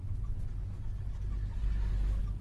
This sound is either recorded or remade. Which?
recorded